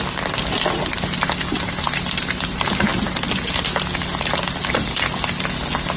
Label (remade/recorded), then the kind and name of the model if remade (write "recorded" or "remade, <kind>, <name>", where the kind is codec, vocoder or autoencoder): recorded